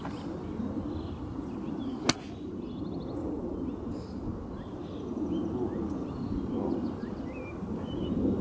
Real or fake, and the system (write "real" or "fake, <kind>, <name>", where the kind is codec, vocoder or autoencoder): real